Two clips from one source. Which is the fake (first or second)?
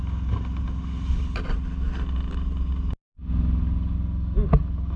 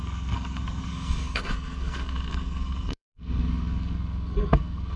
second